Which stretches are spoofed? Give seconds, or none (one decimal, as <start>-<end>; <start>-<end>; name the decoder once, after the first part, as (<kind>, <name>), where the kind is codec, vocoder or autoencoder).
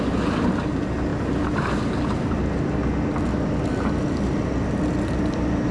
none